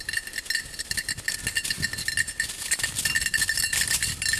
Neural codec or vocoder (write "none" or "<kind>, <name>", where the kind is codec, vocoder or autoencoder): none